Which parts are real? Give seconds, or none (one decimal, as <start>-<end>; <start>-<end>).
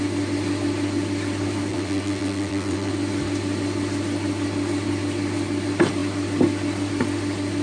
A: 0.0-1.7; 2.9-7.6